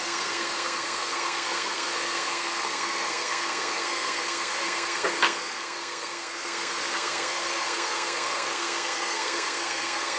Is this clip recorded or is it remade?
remade